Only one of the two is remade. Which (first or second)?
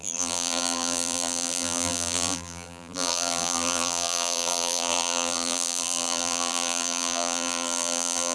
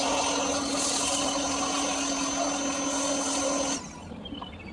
first